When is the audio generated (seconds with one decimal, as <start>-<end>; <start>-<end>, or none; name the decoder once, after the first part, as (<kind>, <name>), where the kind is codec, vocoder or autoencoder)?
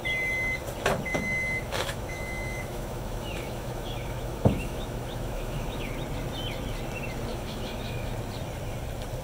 1.1-5.9 (autoencoder, DAC-VAE); 7.3-8.1